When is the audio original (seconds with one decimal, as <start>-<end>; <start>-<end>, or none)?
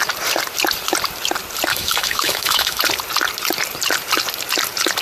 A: 0.0-1.7; 2.8-5.0